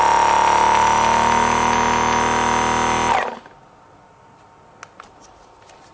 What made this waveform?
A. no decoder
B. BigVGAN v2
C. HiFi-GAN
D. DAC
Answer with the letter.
A